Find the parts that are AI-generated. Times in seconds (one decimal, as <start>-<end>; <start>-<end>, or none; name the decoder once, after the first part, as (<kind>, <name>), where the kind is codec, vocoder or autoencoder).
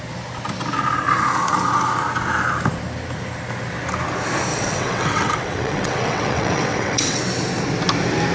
4.5-7.2 (vocoder, WaveNeXt)